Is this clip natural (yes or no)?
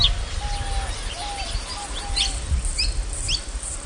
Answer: yes